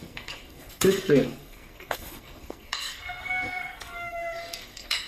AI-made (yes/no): yes